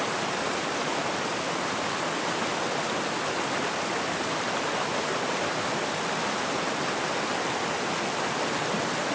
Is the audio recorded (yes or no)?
yes